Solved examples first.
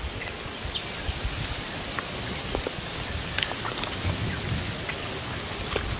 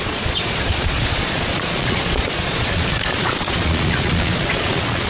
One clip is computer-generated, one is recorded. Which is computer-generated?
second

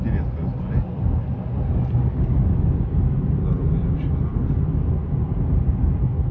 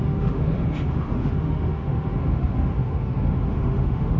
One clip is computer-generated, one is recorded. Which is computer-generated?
second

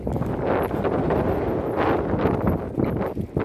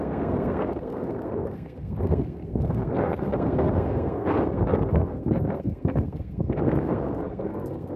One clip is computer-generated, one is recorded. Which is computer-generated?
second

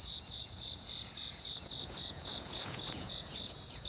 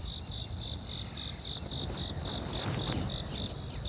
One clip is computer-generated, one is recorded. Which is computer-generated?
first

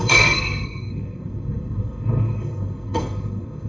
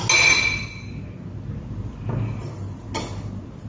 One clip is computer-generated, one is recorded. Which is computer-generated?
first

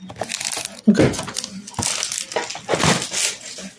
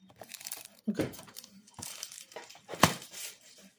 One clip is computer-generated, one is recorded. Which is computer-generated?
second